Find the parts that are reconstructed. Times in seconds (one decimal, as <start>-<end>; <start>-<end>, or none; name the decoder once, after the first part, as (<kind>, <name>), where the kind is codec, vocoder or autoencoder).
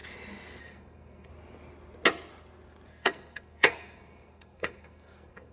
0.6-1.3 (codec, SNAC); 2.9-5.5